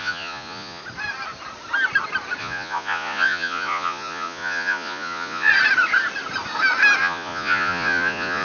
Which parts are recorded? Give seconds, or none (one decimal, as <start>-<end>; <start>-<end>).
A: 0.8-2.4; 5.5-7.0